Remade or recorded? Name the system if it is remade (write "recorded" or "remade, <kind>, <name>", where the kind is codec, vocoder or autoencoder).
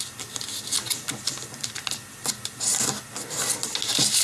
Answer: recorded